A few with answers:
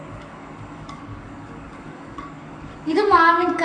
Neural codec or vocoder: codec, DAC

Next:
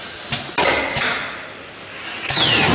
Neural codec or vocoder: none